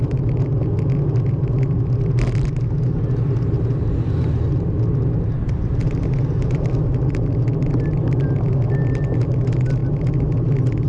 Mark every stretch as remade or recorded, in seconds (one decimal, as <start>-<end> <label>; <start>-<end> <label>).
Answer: 0.0-10.9 recorded